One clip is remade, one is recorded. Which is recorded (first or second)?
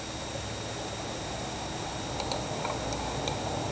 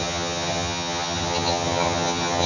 first